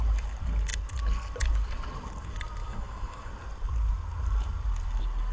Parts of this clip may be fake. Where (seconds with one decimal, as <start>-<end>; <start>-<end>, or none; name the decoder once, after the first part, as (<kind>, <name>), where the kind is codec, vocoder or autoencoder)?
2.6-3.3 (autoencoder, DAC-VAE)